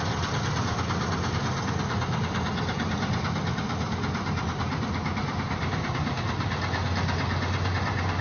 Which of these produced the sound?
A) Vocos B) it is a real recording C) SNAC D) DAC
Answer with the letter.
B